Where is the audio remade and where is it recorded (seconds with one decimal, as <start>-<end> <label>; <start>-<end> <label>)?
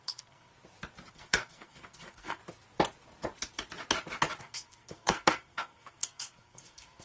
0.0-0.5 remade; 0.5-1.1 recorded; 1.1-2.4 remade; 2.4-4.4 recorded; 4.4-7.0 remade